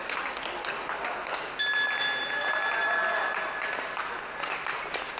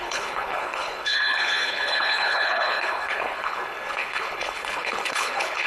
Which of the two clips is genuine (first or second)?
first